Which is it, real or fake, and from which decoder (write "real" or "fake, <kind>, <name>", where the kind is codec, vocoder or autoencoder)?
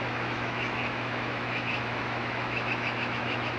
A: fake, autoencoder, DAC-VAE